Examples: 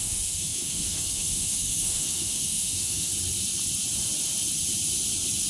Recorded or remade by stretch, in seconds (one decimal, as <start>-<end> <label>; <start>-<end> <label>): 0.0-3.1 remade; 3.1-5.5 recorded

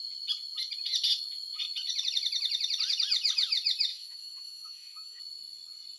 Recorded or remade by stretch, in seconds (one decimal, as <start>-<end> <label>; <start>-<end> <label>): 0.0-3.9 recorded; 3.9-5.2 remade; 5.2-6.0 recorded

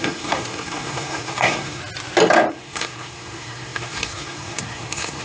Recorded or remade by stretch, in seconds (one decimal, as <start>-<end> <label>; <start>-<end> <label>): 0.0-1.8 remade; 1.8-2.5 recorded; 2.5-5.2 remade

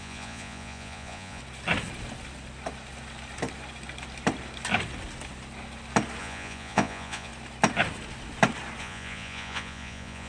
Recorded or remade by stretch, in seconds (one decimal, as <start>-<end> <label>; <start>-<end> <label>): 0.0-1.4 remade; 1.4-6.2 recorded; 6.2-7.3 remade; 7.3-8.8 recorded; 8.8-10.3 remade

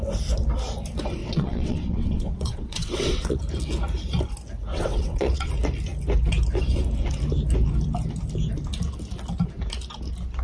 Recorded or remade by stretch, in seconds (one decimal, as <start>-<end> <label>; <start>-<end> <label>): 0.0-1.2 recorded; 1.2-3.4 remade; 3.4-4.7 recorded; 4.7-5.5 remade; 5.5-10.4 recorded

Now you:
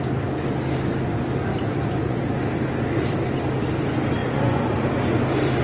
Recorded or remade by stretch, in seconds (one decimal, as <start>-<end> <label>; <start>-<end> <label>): 0.0-1.5 recorded; 1.5-2.2 remade; 2.2-4.2 recorded; 4.2-4.7 remade; 4.7-5.6 recorded

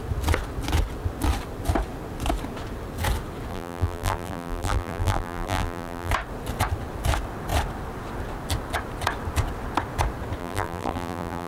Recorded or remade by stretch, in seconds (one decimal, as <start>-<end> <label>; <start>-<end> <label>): 0.0-3.5 recorded; 3.5-6.1 remade; 6.1-10.4 recorded; 10.4-11.5 remade

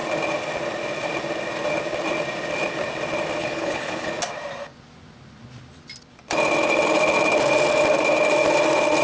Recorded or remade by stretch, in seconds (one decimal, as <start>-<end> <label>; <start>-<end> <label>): 0.0-3.4 recorded; 3.4-4.1 remade; 4.1-9.0 recorded